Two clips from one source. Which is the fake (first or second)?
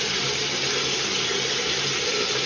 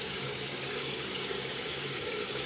second